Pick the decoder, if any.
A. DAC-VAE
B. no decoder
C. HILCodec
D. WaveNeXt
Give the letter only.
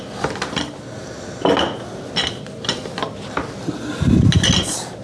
B